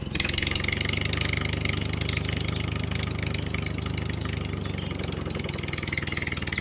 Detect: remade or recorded recorded